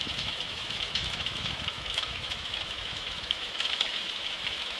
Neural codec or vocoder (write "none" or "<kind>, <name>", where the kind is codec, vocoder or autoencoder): autoencoder, DAC-VAE